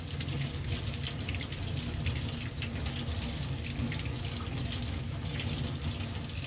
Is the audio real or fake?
real